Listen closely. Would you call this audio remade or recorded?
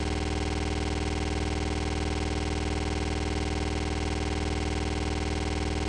recorded